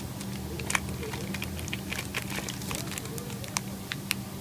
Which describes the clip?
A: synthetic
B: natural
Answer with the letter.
B